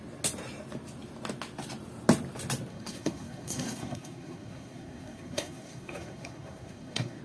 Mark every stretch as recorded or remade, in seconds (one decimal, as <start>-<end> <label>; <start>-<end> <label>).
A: 0.0-2.7 recorded; 2.7-7.2 remade

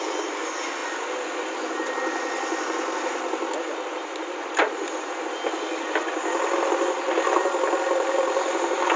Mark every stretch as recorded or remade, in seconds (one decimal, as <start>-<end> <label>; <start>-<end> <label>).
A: 0.0-9.0 recorded

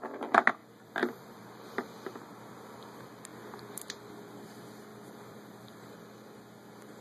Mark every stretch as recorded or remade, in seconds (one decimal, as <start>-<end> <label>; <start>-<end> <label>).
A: 0.0-0.6 recorded; 0.6-1.4 remade; 1.4-4.9 recorded; 4.9-6.0 remade; 6.0-7.0 recorded

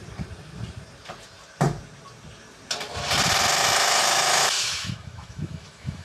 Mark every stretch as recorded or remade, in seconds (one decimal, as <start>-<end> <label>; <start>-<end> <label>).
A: 0.0-3.6 recorded; 3.6-6.0 remade

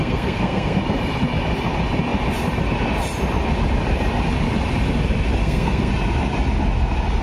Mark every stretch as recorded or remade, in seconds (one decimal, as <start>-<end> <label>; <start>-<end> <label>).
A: 0.0-0.8 remade; 0.8-5.4 recorded; 5.4-5.9 remade; 5.9-7.2 recorded

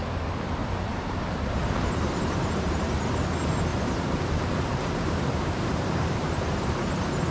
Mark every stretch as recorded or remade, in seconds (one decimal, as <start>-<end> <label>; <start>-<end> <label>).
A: 0.0-0.6 recorded; 0.6-2.8 remade; 2.8-3.7 recorded; 3.7-6.7 remade; 6.7-7.3 recorded